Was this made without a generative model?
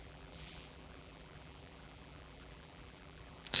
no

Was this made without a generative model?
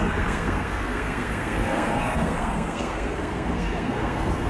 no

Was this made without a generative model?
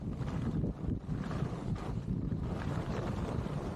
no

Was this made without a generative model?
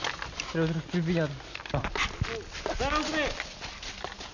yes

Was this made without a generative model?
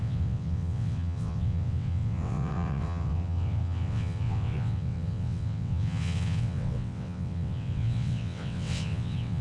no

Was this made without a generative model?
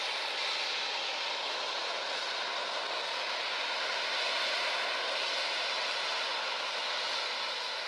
yes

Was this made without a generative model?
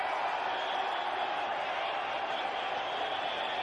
yes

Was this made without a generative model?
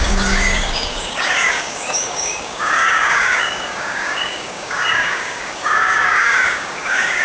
no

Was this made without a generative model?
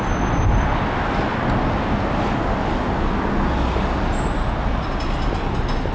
yes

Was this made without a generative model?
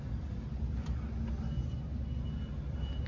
yes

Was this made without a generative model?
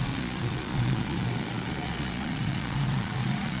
no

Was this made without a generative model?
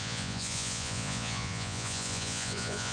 no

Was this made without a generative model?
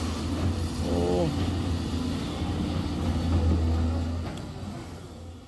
yes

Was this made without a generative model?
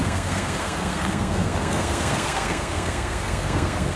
no